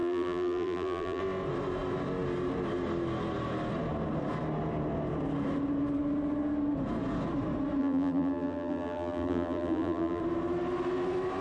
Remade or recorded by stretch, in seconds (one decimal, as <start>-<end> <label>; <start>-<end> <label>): 0.0-1.2 remade; 1.2-7.8 recorded; 7.8-10.2 remade; 10.2-11.4 recorded